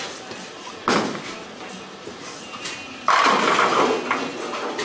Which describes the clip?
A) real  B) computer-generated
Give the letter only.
A